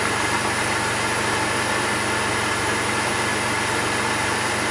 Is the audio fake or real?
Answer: real